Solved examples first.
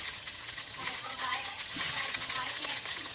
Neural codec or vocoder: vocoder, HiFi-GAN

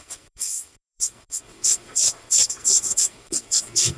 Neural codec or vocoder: codec, SNAC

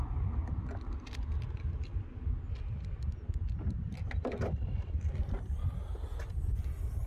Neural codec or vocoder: none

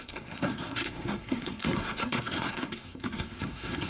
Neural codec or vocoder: codec, SNAC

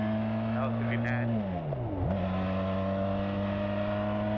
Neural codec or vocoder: none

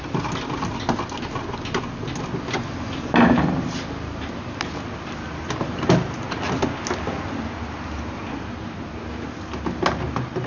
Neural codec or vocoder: none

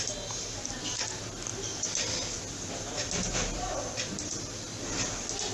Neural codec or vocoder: none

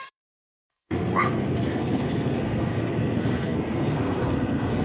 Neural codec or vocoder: codec, SNAC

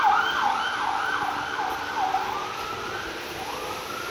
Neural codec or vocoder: none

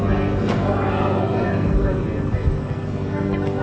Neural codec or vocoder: codec, SNAC